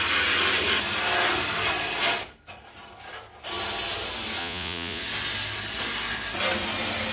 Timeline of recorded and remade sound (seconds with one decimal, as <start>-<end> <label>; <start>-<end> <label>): 0.0-4.4 recorded; 4.4-5.0 remade; 5.0-7.1 recorded